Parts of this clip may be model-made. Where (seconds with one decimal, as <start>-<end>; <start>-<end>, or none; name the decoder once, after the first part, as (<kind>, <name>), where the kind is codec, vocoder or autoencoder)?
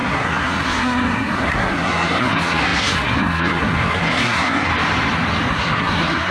0.0-4.7 (codec, SNAC); 5.5-6.3